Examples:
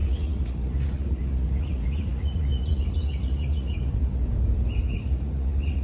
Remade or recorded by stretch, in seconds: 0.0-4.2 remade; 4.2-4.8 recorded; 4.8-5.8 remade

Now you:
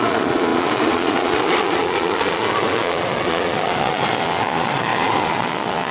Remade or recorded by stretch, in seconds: 0.0-5.9 remade

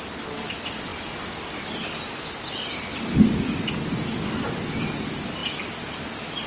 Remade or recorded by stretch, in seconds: 0.0-6.5 recorded

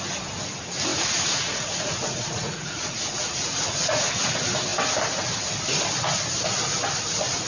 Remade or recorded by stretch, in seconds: 0.0-0.9 recorded; 0.9-4.1 remade; 4.1-7.5 recorded

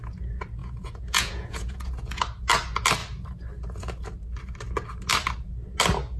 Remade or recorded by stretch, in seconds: 0.0-0.6 recorded; 0.6-2.2 remade; 2.2-6.2 recorded